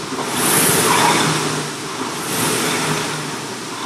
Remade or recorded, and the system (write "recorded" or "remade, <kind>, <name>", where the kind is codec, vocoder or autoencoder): recorded